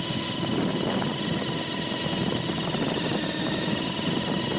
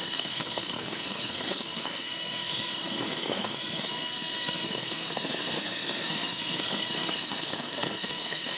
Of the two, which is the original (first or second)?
first